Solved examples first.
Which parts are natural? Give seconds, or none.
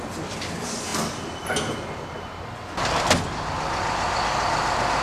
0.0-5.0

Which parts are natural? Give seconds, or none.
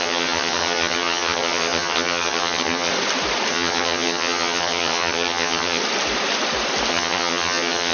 2.9-3.5; 5.8-6.9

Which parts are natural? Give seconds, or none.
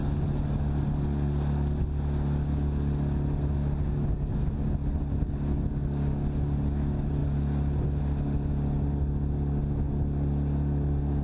0.0-11.2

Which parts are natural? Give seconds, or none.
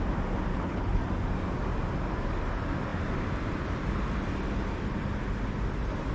0.0-0.5; 1.0-6.1